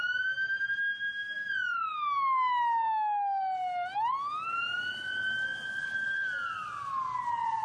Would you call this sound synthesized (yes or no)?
no